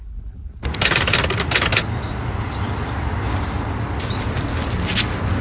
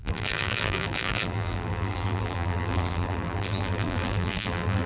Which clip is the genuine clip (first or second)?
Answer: first